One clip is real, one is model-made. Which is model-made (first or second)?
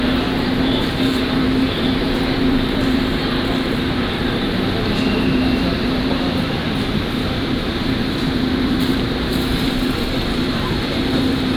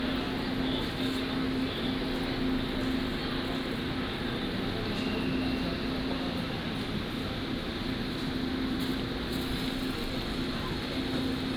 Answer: first